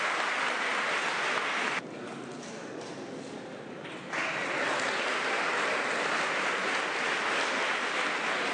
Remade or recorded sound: recorded